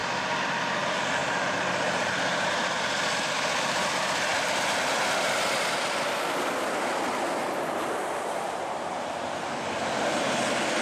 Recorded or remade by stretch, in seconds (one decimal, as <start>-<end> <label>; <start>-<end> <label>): 0.0-0.6 recorded; 0.6-1.2 remade; 1.2-2.4 recorded; 2.4-10.8 remade